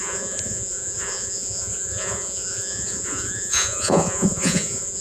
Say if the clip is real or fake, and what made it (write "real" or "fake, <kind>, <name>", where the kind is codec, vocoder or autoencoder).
fake, vocoder, Vocos